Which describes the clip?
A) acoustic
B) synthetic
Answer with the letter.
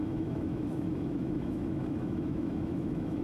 B